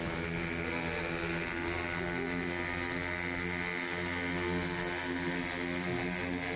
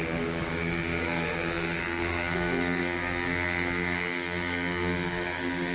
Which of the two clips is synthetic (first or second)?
second